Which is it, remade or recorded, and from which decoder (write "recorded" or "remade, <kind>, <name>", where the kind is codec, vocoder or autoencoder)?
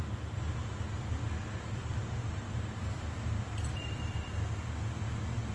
recorded